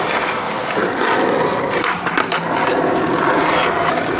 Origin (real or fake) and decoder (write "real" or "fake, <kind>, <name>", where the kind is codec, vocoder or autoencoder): real